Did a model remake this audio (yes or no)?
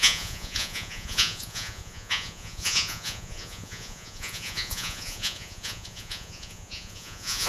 yes